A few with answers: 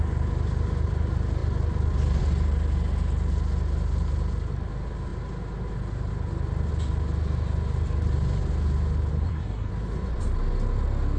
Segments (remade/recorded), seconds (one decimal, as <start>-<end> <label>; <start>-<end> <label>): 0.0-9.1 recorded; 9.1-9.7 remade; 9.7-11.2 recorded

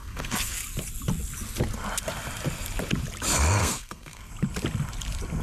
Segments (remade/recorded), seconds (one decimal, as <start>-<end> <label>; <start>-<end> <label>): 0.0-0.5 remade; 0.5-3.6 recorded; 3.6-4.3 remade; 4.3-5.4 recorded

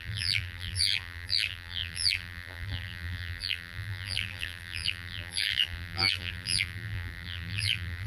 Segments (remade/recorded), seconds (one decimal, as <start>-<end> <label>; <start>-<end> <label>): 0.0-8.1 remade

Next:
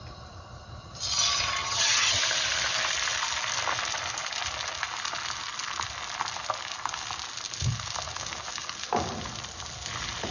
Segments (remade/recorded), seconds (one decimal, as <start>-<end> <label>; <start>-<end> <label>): 0.0-1.6 recorded; 1.6-2.2 remade; 2.2-10.3 recorded

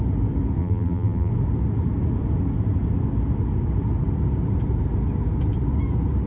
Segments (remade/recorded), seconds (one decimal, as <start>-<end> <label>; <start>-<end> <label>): 0.0-0.6 recorded; 0.6-1.3 remade; 1.3-6.3 recorded

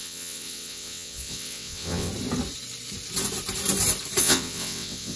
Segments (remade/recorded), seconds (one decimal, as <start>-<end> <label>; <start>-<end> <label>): 0.0-2.1 remade; 2.1-4.2 recorded; 4.2-5.2 remade

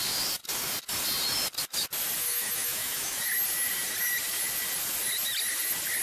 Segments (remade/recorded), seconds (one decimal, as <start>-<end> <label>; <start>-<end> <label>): 0.0-2.2 recorded; 2.2-3.2 remade; 3.2-6.0 recorded

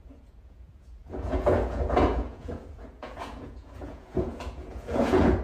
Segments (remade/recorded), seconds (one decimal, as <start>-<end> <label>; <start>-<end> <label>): 0.0-5.4 remade